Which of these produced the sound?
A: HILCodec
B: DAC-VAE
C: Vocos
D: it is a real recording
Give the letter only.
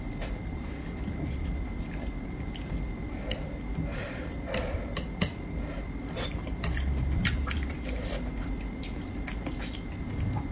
D